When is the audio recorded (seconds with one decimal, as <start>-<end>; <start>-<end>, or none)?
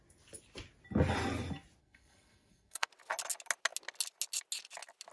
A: 0.0-1.8; 2.9-5.1